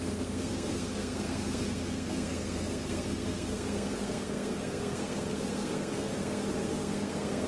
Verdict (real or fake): fake